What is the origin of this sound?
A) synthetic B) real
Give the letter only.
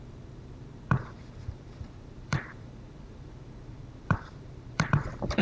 A